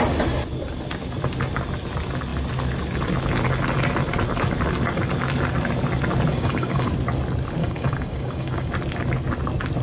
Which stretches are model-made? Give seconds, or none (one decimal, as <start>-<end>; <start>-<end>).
6.3-6.9; 7.6-8.7